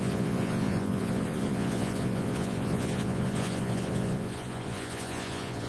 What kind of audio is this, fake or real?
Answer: fake